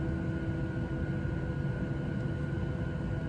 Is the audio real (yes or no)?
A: yes